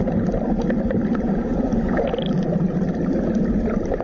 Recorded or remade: recorded